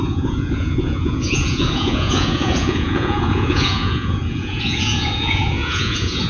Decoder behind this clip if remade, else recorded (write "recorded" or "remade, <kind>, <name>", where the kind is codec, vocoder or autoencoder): remade, vocoder, Vocos